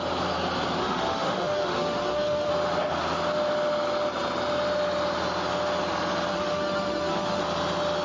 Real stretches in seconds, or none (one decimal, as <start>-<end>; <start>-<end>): 0.0-0.8; 2.5-6.3; 7.4-8.0